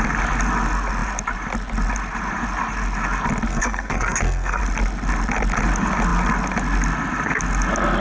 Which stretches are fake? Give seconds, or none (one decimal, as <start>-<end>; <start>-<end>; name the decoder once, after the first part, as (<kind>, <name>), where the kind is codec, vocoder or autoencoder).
3.5-4.6 (codec, SNAC)